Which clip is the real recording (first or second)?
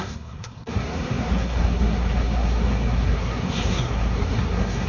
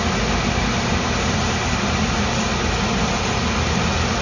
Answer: second